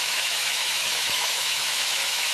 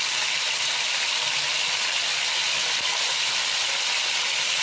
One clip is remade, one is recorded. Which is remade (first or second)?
first